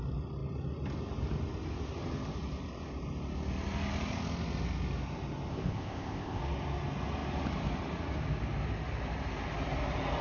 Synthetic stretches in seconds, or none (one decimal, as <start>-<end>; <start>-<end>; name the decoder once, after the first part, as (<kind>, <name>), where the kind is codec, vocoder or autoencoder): 5.5-6.4 (codec, ZipCodec)